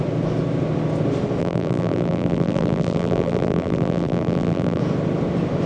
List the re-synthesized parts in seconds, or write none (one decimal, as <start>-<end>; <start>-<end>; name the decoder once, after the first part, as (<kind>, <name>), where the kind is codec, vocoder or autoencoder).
1.4-4.8 (vocoder, BigVGAN v2)